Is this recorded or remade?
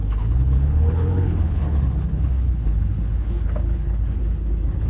remade